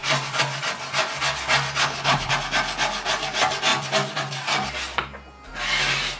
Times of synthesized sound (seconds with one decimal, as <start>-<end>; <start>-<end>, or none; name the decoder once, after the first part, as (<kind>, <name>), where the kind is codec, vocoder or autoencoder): 1.8-2.3 (codec, HILCodec)